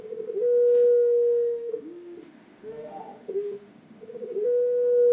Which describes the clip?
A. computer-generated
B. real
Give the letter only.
A